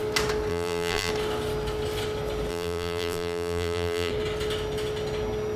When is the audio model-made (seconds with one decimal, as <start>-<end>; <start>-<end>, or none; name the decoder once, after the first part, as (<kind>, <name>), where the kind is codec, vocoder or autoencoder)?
0.5-1.1 (vocoder, BigVGAN v2); 2.5-4.1